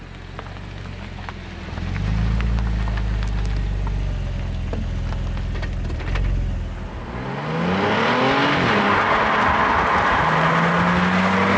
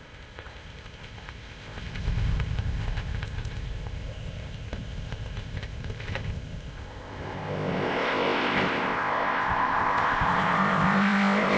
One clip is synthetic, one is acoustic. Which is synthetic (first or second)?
second